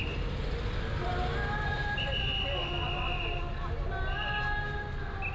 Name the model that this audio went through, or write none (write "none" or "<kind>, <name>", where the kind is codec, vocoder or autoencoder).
none